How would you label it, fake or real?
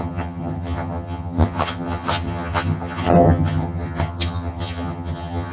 fake